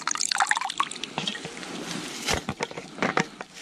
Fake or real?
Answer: real